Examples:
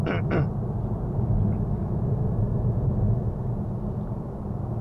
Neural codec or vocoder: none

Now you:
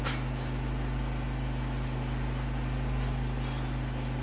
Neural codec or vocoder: none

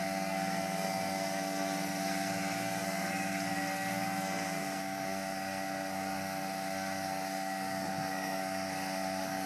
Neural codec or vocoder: codec, SNAC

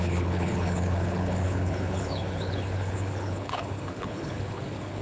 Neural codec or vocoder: codec, HILCodec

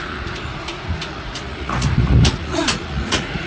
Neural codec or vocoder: vocoder, Vocos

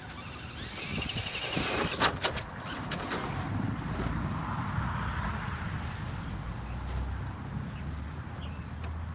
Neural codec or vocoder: none